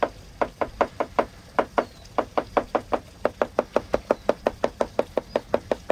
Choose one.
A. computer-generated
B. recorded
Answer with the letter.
B